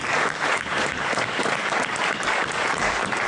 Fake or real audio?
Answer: fake